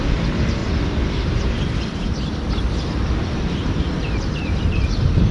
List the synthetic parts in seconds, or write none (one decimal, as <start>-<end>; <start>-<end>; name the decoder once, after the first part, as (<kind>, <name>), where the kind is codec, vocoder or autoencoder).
0.0-5.3 (vocoder, BigVGAN v2)